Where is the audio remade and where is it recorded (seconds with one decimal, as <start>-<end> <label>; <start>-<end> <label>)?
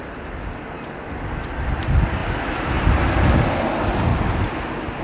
0.0-5.0 recorded